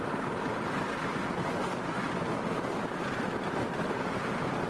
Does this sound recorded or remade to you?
recorded